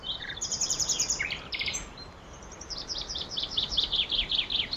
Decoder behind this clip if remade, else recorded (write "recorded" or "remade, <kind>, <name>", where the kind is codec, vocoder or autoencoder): remade, vocoder, BigVGAN v2